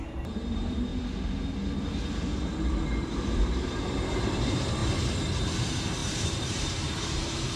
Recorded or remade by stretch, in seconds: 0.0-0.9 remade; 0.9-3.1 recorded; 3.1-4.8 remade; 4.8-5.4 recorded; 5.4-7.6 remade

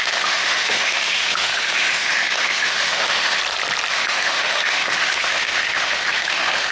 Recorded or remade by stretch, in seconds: 0.0-3.4 remade; 3.4-3.9 recorded; 3.9-6.7 remade

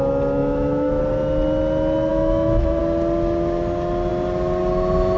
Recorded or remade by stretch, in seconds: 0.0-0.4 recorded; 0.4-1.0 remade; 1.0-2.1 recorded; 2.1-2.8 remade; 2.8-5.2 recorded